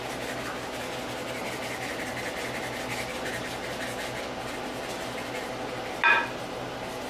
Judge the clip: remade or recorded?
recorded